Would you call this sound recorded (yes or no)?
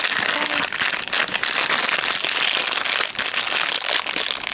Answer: yes